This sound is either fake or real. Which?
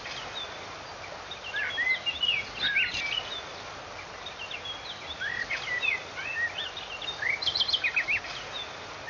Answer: real